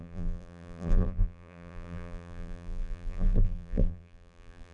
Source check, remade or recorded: remade